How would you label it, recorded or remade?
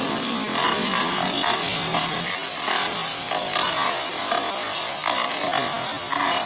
remade